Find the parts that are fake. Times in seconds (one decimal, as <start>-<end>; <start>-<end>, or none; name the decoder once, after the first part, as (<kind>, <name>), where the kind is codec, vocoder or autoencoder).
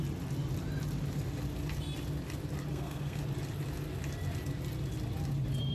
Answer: 2.7-3.2 (codec, SNAC)